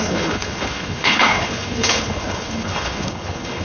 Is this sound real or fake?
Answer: fake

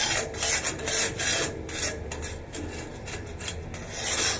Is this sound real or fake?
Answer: real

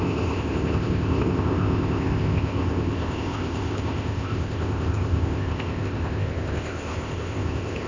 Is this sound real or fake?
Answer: fake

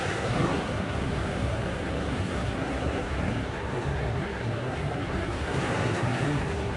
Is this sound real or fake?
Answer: fake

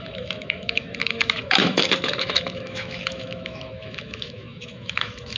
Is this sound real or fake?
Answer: fake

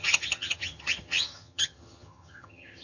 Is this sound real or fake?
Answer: fake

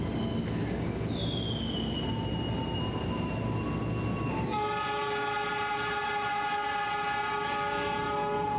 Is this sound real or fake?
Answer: real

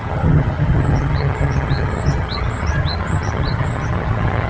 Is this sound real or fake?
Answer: fake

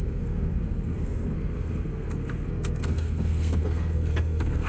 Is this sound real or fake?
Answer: fake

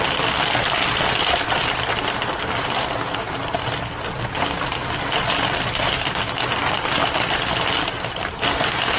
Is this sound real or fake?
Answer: real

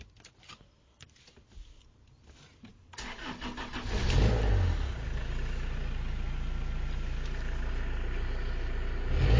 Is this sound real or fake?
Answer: real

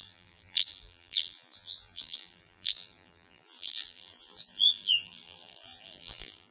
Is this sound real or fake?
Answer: fake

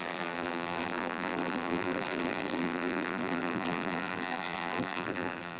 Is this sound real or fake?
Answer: fake